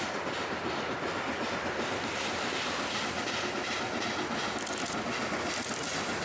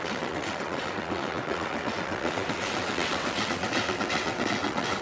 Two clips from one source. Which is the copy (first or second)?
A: second